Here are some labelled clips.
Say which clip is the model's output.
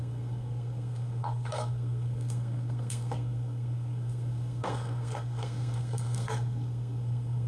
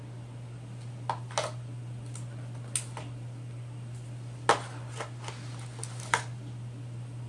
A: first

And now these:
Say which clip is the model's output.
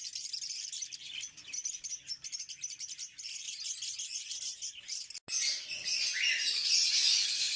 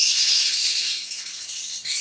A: second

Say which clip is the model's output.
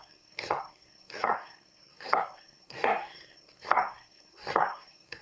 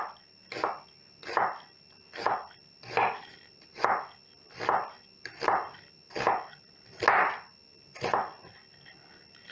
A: first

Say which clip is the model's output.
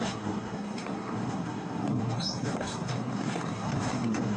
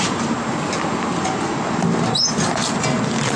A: first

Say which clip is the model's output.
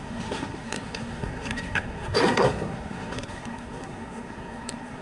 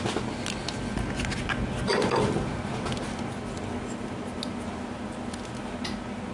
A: first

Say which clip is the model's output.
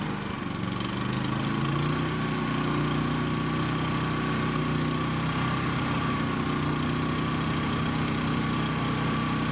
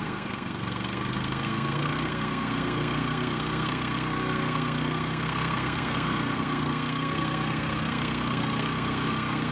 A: second